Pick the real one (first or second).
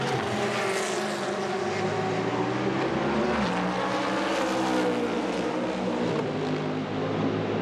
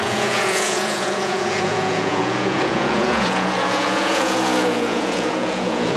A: first